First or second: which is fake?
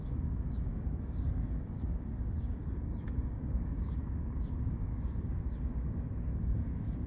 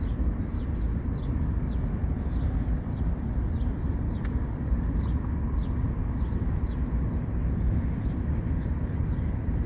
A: first